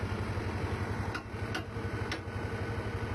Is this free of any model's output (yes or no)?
yes